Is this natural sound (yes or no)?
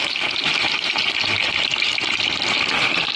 yes